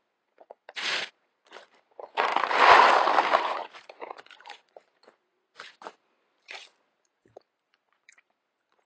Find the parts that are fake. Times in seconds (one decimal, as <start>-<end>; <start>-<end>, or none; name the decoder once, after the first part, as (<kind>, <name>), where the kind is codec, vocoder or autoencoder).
0.0-2.3 (vocoder, Vocos); 3.3-8.9